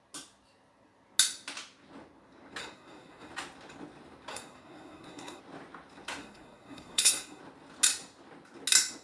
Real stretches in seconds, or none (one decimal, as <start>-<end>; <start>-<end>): 0.0-2.6; 3.3-4.3; 5.4-6.2; 7.4-9.0